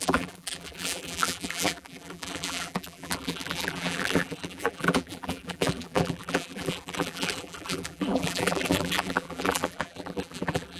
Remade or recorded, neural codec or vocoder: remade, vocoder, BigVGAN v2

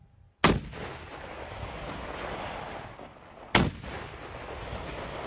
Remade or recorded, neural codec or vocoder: recorded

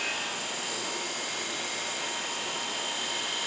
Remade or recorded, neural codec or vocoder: recorded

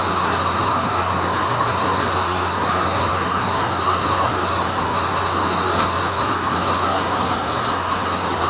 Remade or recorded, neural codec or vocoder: remade, codec, SNAC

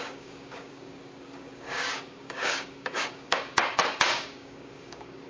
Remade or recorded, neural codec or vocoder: remade, codec, DAC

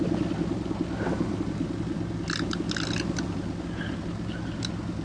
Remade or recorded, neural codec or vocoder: recorded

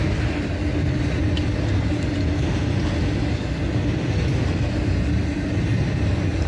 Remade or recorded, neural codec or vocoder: recorded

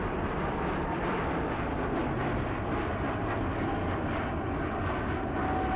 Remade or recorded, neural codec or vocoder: recorded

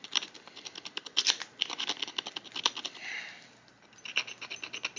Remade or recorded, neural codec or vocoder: recorded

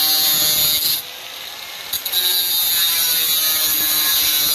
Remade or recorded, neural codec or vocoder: recorded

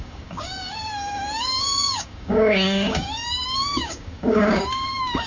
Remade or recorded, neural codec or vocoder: remade, codec, DAC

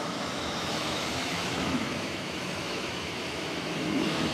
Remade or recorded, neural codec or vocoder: remade, autoencoder, DAC-VAE